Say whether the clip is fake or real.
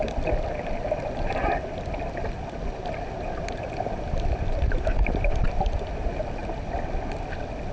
real